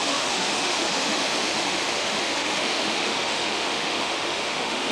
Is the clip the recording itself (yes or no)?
no